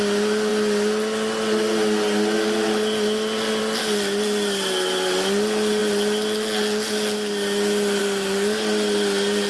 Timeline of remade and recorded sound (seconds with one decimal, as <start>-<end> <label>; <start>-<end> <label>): 0.0-9.5 recorded